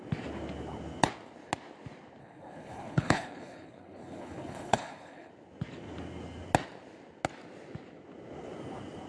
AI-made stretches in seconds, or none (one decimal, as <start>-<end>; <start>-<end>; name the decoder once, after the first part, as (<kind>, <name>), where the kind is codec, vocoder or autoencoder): 2.2-5.3 (codec, HILCodec)